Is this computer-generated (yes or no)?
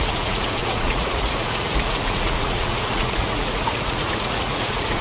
yes